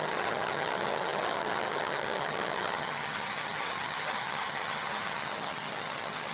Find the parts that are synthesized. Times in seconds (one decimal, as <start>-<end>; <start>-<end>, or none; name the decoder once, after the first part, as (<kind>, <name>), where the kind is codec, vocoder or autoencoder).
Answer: 0.0-6.3 (vocoder, HiFi-GAN)